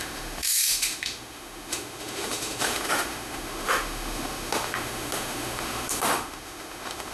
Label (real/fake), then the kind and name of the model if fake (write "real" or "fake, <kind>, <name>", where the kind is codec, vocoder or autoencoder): fake, autoencoder, DAC-VAE